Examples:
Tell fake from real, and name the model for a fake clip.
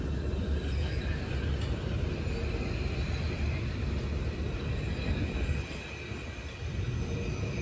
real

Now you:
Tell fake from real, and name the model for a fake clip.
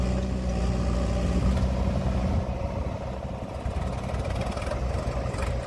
real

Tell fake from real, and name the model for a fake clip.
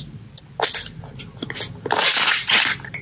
real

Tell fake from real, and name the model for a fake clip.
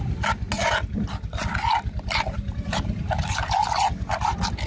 real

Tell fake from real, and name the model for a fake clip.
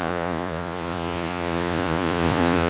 fake, vocoder, Vocos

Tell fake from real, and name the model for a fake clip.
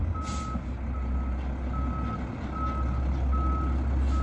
real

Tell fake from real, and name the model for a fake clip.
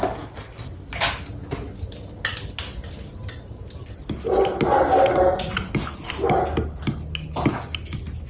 real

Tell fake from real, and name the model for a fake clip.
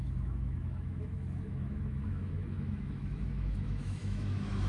fake, autoencoder, DAC-VAE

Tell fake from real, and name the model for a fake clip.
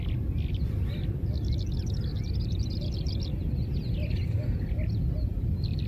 real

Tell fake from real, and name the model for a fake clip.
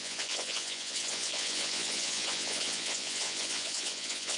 fake, vocoder, Vocos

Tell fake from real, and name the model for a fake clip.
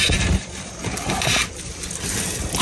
real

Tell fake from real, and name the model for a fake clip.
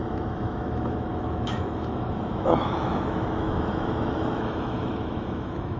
fake, autoencoder, DAC-VAE